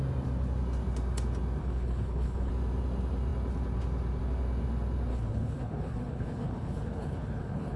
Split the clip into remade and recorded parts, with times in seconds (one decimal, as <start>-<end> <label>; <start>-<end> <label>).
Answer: 0.0-1.6 recorded; 1.6-2.5 remade; 2.5-5.1 recorded; 5.1-7.8 remade